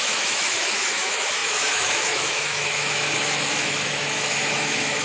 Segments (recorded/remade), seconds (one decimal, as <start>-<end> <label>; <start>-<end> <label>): 0.0-5.0 remade